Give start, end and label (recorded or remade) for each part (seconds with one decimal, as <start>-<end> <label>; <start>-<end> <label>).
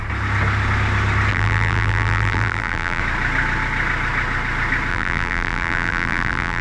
0.0-1.3 recorded; 1.3-3.0 remade; 3.0-4.9 recorded; 4.9-6.6 remade